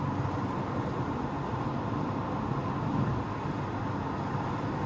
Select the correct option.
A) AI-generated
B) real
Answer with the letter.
B